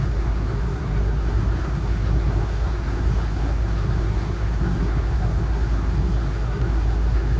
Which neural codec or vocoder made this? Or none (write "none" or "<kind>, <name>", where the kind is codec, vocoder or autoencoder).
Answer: codec, SNAC